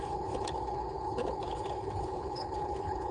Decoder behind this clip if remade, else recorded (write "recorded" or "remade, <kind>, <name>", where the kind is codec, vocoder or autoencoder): remade, codec, HILCodec